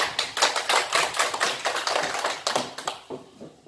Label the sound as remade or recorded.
recorded